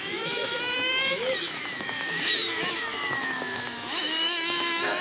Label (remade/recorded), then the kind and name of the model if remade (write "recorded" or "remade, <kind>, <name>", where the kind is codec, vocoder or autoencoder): remade, autoencoder, DAC-VAE